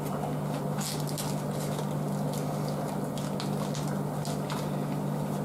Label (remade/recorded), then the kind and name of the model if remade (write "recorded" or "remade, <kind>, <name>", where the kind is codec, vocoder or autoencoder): recorded